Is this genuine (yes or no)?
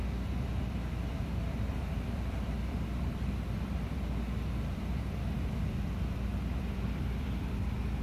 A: no